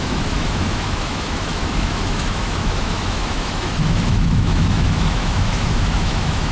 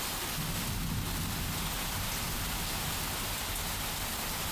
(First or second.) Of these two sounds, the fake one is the first